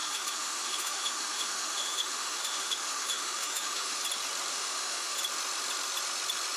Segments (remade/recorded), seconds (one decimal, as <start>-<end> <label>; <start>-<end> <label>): 0.0-4.0 remade; 4.0-4.5 recorded; 4.5-5.2 remade; 5.2-6.6 recorded